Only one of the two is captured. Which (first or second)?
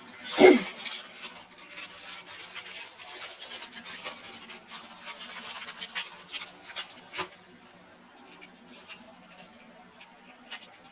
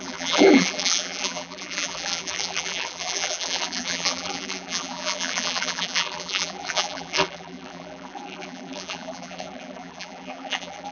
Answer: first